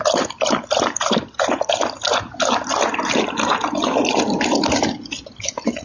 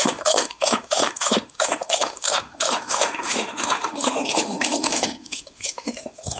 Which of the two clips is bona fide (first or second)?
first